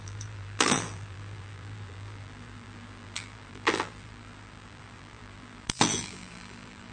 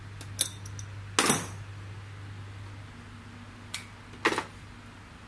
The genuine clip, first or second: second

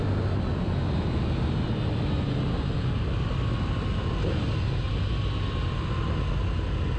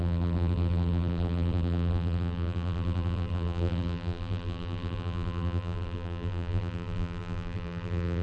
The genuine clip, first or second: first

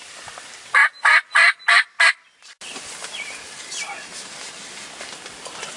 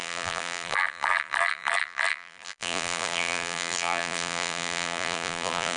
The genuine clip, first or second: first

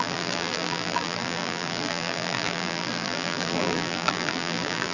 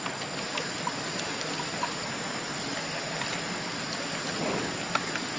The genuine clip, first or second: second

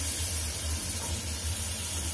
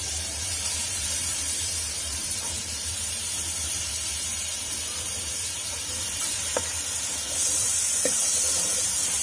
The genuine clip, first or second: first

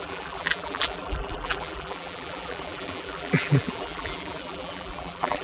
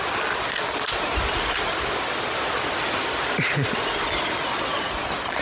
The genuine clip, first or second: second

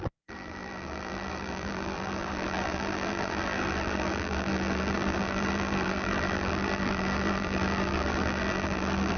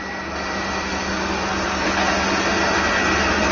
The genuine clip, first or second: second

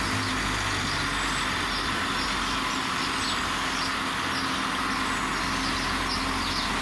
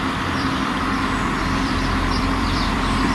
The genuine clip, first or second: first